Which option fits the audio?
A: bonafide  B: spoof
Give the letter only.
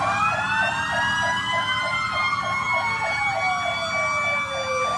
A